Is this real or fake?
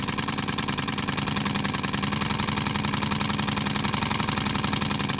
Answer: real